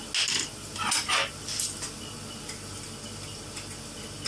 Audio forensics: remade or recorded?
recorded